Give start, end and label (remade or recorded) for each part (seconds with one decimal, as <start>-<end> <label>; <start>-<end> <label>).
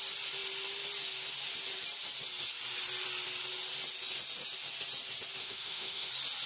0.0-5.4 recorded; 5.4-6.1 remade; 6.1-6.5 recorded